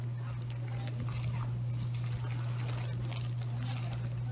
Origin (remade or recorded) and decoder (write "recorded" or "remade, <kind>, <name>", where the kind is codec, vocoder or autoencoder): recorded